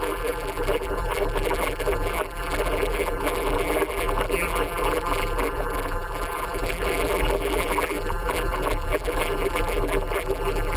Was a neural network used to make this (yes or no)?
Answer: yes